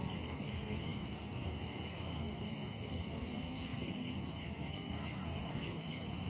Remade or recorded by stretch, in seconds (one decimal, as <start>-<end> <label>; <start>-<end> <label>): 0.0-6.3 remade